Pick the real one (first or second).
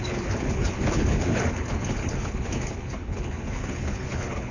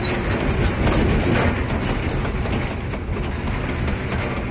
second